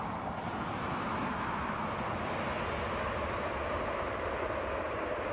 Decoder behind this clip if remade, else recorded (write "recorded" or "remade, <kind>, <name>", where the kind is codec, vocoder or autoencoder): recorded